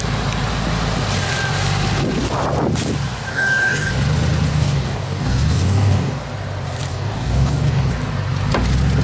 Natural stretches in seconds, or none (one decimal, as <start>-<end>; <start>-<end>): 0.0-3.3; 3.9-4.5; 6.1-6.9; 7.9-9.0